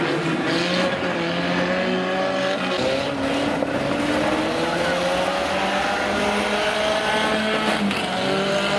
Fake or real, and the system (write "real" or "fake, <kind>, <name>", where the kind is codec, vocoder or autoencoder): real